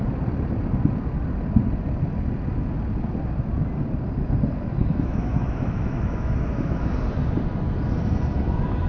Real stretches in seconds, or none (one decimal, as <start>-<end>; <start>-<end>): 0.0-4.8; 6.9-8.9